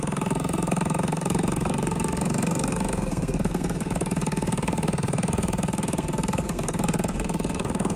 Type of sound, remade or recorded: remade